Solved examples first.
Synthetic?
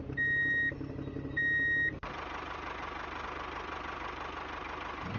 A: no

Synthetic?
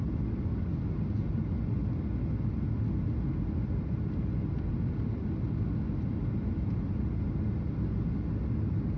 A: no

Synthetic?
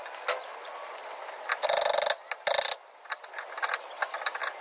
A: no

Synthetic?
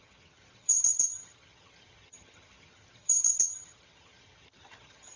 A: yes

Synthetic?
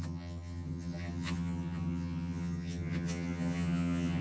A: yes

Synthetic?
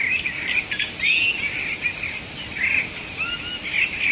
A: no